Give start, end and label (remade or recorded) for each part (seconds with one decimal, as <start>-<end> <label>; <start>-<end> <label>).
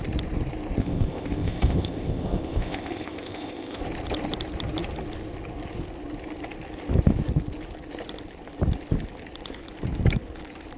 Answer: 0.0-0.8 recorded; 0.8-3.8 remade; 3.8-10.8 recorded